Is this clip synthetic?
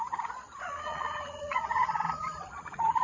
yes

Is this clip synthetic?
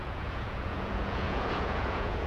yes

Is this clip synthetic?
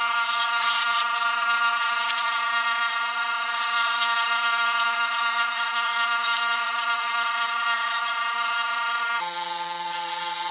yes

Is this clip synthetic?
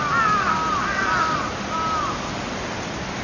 no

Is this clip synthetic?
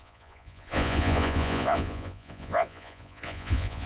yes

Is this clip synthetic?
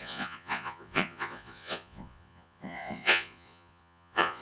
yes